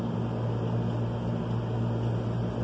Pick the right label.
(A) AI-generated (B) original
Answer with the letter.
B